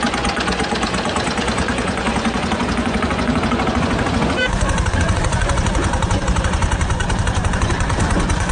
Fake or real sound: fake